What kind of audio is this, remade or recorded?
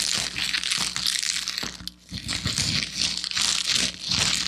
recorded